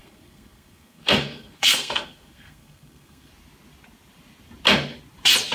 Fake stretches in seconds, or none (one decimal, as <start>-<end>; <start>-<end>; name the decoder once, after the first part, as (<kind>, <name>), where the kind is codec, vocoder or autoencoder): 0.0-3.3 (codec, SNAC)

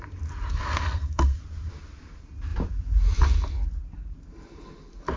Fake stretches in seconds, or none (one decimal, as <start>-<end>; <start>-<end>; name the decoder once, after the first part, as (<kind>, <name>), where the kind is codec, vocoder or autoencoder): 0.5-1.4 (codec, SNAC)

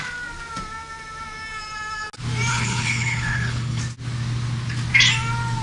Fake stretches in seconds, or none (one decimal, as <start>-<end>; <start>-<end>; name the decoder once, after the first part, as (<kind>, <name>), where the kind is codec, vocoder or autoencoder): 2.5-3.8 (codec, HILCodec)

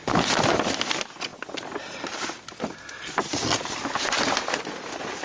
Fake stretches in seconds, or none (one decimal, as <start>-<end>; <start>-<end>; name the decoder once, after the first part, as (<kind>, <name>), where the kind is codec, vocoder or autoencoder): none

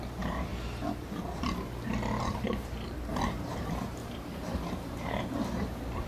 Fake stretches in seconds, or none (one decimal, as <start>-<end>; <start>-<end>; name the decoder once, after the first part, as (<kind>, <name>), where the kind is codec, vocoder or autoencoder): 0.0-0.5 (vocoder, BigVGAN v2); 2.2-6.1

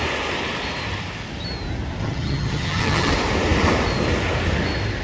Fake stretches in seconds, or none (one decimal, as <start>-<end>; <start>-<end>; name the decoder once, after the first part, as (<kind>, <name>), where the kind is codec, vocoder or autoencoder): 2.0-3.1 (vocoder, HiFi-GAN)

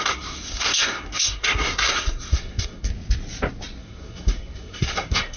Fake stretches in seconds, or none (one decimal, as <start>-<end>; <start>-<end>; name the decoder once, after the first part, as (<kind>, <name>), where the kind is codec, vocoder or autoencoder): 0.0-2.9 (codec, SNAC); 3.8-5.4

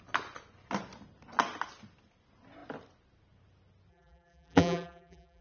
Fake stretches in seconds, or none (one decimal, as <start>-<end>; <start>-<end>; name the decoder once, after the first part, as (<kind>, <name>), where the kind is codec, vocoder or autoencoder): 3.9-5.4 (vocoder, BigVGAN v2)